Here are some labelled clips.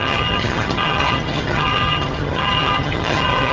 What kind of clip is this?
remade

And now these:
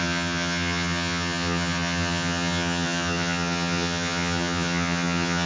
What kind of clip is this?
remade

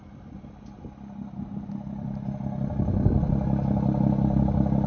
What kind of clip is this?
recorded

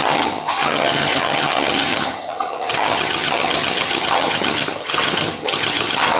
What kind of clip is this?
remade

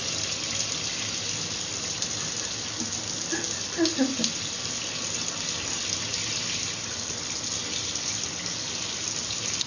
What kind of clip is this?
recorded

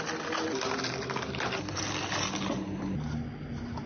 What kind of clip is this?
recorded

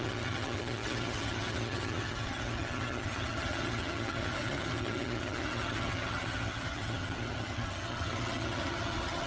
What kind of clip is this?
remade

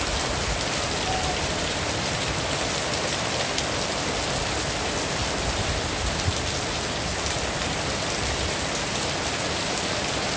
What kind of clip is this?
recorded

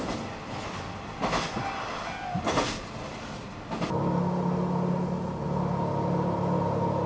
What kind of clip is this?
recorded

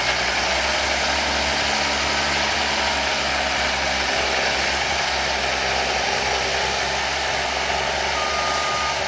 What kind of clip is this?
recorded